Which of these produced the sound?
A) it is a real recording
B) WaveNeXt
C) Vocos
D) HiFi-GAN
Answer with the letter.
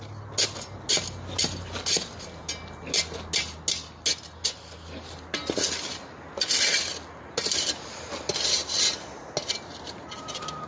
A